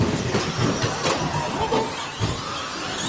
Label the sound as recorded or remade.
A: recorded